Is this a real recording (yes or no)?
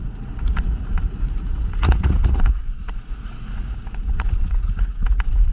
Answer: no